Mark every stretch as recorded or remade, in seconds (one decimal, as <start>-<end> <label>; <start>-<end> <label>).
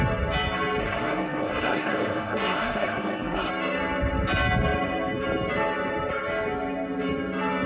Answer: 0.0-0.8 recorded; 0.8-3.5 remade; 3.5-7.7 recorded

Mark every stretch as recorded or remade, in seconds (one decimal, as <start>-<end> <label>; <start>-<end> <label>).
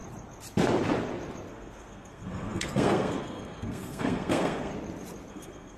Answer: 0.0-1.5 recorded; 1.5-4.7 remade; 4.7-5.3 recorded; 5.3-5.8 remade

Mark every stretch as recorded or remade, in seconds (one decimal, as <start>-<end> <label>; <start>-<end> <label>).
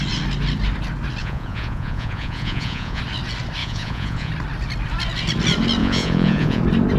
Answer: 0.0-1.2 recorded; 1.2-3.0 remade; 3.0-3.6 recorded; 3.6-4.3 remade; 4.3-5.8 recorded; 5.8-6.6 remade; 6.6-7.0 recorded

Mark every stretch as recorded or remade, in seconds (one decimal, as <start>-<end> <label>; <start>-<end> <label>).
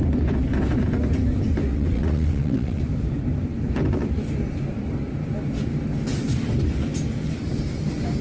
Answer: 0.0-1.7 recorded; 1.7-2.8 remade; 2.8-8.2 recorded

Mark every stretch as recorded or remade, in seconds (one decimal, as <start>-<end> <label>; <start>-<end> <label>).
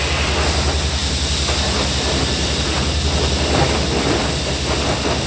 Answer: 0.0-5.3 recorded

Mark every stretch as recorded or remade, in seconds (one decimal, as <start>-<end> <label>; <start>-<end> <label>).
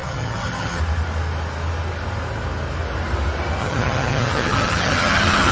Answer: 0.0-0.8 remade; 0.8-3.6 recorded; 3.6-5.5 remade